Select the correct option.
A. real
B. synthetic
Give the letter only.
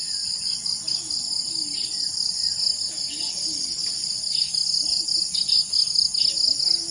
A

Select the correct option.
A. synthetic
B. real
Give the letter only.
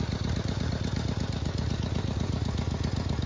B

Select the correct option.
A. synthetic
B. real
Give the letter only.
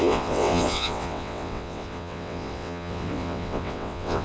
A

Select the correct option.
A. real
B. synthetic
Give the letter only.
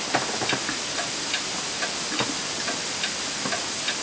A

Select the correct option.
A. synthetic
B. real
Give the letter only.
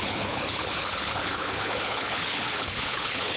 A